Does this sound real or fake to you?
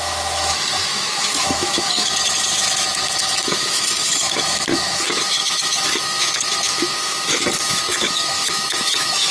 fake